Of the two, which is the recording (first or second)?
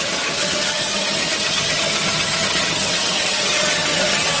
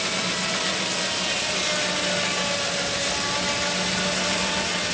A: second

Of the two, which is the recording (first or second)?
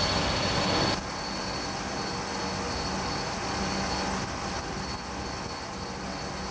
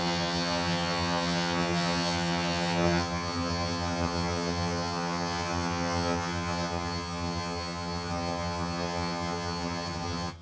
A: first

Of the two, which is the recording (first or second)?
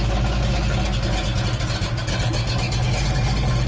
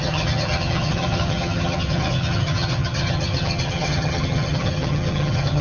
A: first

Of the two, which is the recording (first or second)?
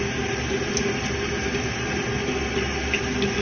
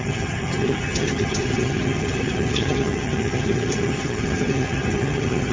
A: first